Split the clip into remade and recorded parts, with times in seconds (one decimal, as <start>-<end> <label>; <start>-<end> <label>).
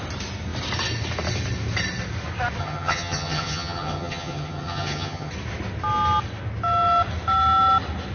0.0-2.6 recorded; 2.6-5.3 remade; 5.3-8.1 recorded